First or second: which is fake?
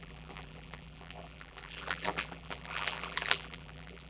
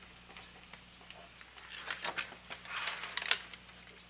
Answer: first